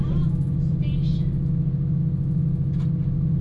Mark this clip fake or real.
real